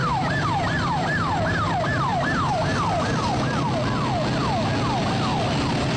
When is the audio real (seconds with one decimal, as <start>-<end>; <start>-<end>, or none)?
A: 3.6-6.0

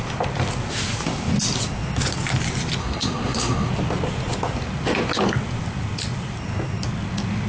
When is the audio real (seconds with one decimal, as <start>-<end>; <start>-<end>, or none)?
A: 0.0-2.8; 3.7-7.5